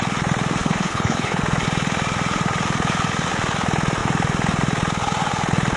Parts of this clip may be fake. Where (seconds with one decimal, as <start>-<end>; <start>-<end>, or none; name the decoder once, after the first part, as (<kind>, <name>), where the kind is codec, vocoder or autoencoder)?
0.6-1.4 (codec, HILCodec)